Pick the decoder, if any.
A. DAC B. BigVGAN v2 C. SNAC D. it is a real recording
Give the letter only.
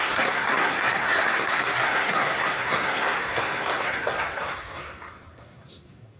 C